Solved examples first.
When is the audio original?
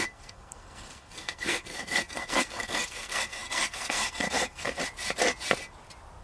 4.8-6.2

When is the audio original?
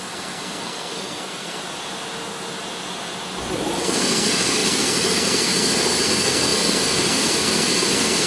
1.6-3.8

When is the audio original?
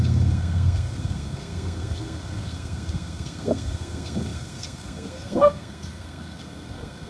none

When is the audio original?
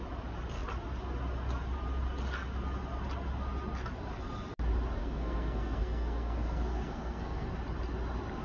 0.0-5.0; 7.5-8.4